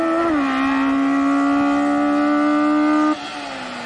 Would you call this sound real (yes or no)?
yes